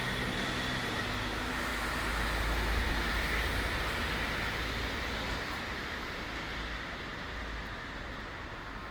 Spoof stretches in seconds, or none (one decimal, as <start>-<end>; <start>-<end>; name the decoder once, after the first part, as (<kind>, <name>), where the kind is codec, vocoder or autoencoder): none